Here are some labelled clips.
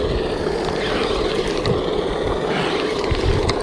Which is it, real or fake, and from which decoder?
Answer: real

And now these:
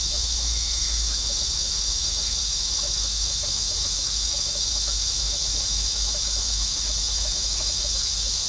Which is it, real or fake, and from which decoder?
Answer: fake, autoencoder, DAC-VAE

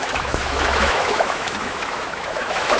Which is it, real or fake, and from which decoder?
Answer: fake, autoencoder, DAC-VAE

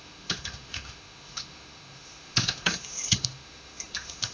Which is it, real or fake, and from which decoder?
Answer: fake, autoencoder, DAC-VAE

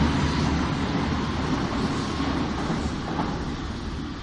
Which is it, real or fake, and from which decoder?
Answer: real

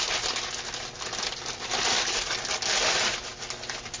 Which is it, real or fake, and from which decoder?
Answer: real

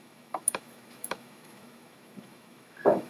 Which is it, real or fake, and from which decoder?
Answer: fake, autoencoder, DAC-VAE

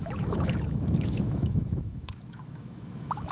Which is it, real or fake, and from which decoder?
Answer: fake, autoencoder, DAC-VAE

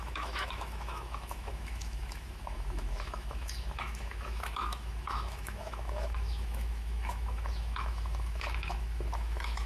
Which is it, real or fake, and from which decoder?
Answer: fake, autoencoder, DAC-VAE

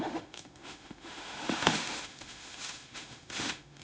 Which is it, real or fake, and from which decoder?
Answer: fake, autoencoder, DAC-VAE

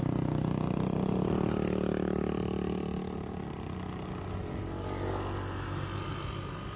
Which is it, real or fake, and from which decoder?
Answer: real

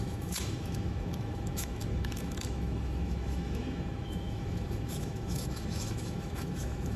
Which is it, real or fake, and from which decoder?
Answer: fake, autoencoder, DAC-VAE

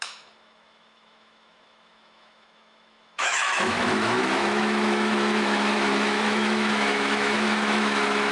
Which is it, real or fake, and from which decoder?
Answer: fake, autoencoder, DAC-VAE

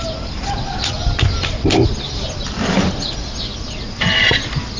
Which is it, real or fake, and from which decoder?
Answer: real